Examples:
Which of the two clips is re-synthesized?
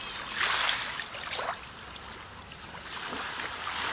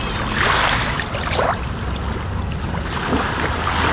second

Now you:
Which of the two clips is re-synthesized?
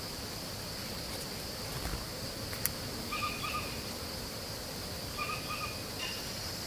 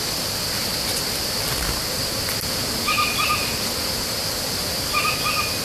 first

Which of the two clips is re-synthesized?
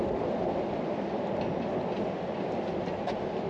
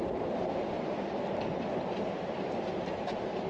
second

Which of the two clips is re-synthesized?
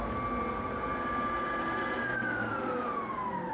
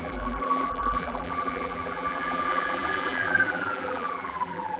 second